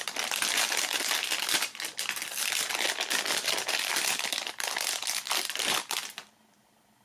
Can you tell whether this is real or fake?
real